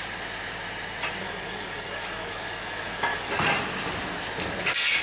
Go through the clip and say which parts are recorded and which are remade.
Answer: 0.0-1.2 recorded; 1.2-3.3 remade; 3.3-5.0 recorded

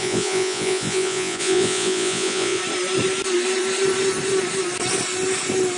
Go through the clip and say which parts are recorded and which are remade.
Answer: 0.0-2.6 remade; 2.6-5.8 recorded

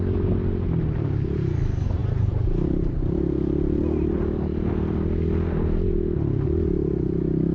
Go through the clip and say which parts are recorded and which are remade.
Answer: 0.0-2.0 recorded; 2.0-3.0 remade; 3.0-7.5 recorded

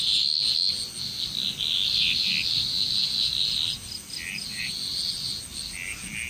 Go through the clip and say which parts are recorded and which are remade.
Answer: 0.0-6.3 recorded